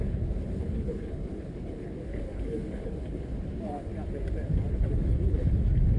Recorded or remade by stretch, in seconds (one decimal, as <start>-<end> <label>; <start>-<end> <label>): 0.0-3.9 remade; 3.9-4.7 recorded; 4.7-6.0 remade